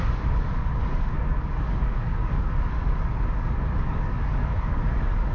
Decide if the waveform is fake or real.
fake